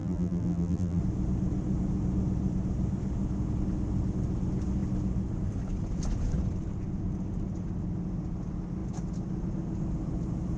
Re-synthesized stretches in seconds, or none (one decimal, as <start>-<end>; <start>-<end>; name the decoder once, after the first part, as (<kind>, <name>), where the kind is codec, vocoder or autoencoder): 0.0-1.0 (vocoder, BigVGAN v2)